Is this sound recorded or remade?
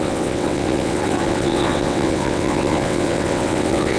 remade